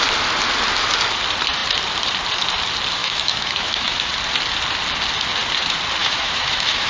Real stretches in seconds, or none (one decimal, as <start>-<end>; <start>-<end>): 0.0-3.0; 4.1-6.0